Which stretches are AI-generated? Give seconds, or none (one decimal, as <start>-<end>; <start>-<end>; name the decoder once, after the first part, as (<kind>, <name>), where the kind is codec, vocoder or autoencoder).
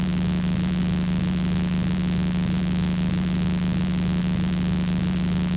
none